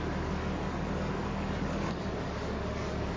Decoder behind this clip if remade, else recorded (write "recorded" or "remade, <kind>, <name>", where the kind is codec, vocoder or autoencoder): remade, codec, DAC